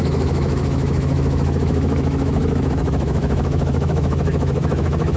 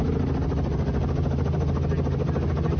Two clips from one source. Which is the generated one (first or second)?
first